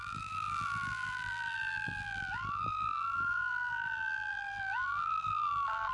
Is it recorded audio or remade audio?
remade